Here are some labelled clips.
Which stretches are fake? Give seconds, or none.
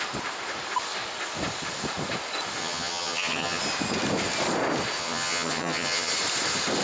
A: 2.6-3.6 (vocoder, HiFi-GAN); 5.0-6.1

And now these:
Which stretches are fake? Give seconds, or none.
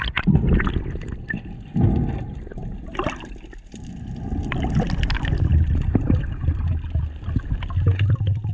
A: none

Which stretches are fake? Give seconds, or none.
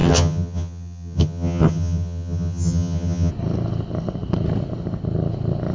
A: 0.0-3.3 (vocoder, HiFi-GAN)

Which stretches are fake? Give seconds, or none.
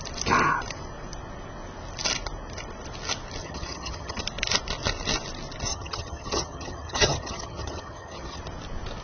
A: 3.4-4.2 (vocoder, HiFi-GAN); 5.7-8.4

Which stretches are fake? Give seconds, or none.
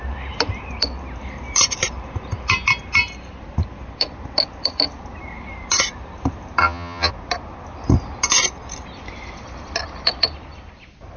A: 6.6-7.1 (vocoder, HiFi-GAN)